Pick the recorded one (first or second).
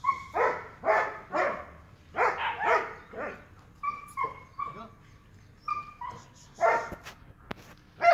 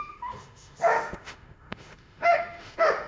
first